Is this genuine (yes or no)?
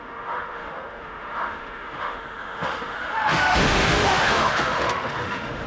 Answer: no